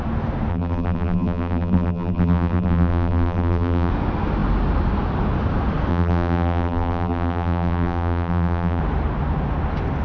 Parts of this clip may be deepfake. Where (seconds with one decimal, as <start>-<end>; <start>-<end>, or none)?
0.5-3.9; 5.9-8.8